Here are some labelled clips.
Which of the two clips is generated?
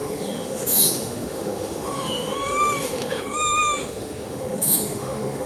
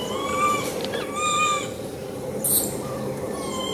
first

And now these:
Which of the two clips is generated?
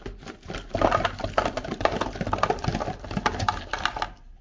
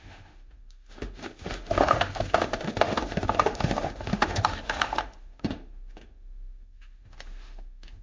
second